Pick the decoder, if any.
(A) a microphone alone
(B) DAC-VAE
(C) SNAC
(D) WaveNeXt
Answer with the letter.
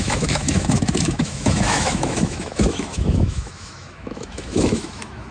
B